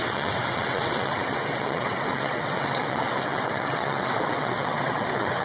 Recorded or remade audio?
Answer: remade